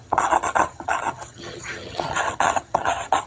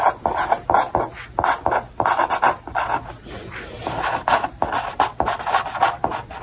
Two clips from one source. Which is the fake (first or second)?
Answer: first